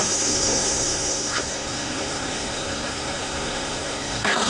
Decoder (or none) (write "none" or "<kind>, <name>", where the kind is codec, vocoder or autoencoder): codec, SNAC